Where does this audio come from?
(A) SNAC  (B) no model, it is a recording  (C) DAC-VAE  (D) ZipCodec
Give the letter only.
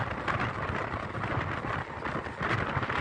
B